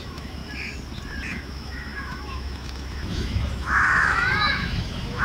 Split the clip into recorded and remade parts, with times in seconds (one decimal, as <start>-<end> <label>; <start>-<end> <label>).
0.0-0.4 remade; 0.4-1.3 recorded; 1.3-5.2 remade